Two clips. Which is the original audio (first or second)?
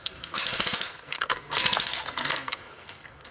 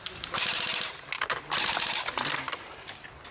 second